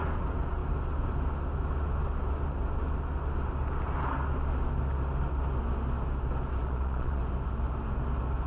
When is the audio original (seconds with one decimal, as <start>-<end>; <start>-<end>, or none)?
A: 0.0-6.6; 7.2-8.5